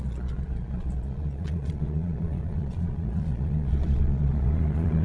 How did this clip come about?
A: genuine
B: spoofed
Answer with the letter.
B